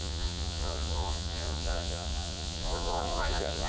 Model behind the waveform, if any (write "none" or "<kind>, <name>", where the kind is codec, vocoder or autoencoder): vocoder, Vocos